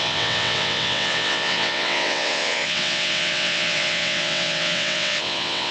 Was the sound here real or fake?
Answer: fake